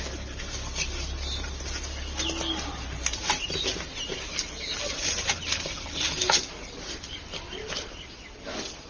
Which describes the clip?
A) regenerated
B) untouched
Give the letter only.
B